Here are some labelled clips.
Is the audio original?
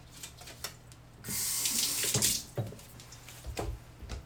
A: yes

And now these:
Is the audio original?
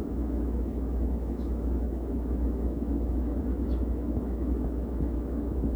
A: no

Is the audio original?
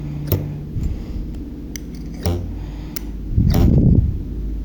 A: yes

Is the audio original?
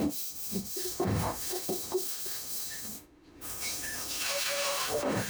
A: no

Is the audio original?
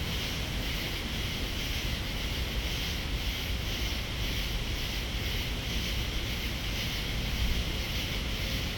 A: yes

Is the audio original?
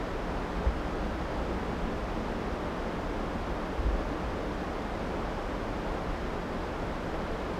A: yes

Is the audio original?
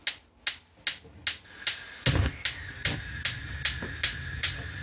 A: yes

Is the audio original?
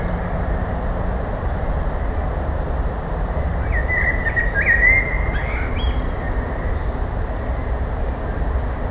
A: yes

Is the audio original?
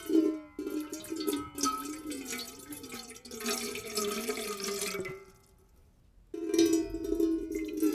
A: yes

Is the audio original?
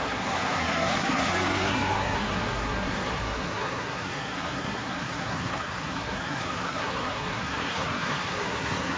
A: no